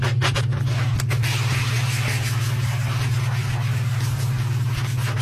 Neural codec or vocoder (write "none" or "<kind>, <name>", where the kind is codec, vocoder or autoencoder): none